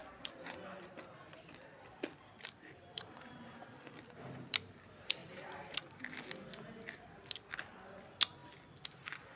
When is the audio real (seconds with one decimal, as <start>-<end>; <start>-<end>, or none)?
0.0-2.3; 3.2-5.2; 5.8-9.4

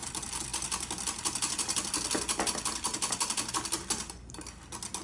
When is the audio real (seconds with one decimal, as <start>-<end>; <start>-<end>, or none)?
0.0-5.0

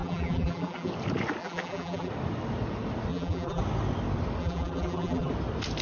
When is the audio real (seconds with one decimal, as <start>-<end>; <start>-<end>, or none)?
0.9-1.4; 2.1-3.1; 3.6-4.4; 5.3-5.8

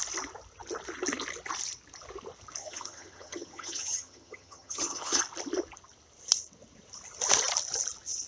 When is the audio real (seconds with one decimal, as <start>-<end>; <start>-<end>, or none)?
0.0-2.6; 5.2-8.3